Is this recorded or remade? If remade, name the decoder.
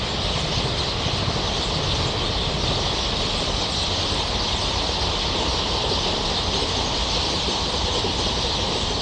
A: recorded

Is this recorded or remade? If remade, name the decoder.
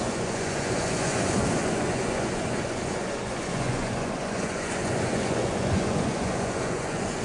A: remade, vocoder, Vocos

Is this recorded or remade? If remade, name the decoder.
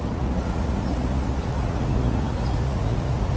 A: remade, vocoder, Vocos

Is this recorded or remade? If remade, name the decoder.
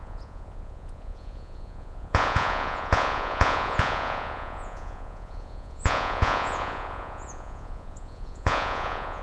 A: remade, vocoder, Vocos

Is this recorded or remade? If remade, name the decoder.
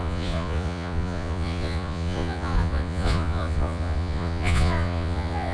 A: remade, vocoder, Vocos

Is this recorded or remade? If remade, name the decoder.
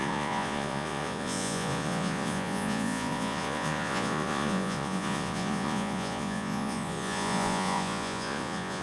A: remade, vocoder, Vocos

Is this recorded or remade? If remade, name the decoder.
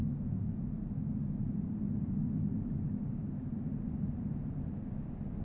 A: recorded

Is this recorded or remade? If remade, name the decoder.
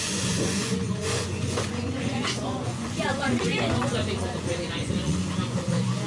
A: remade, vocoder, Vocos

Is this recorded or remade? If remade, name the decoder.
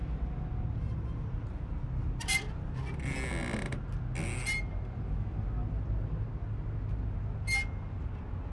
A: recorded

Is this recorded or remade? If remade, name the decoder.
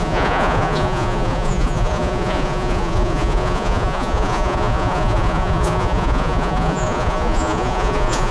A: remade, vocoder, Vocos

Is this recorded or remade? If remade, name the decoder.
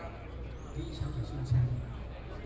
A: recorded